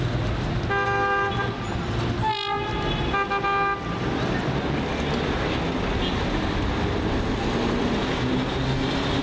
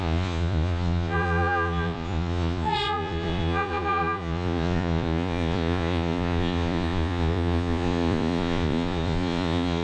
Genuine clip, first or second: first